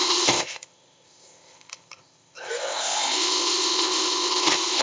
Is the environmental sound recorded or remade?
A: remade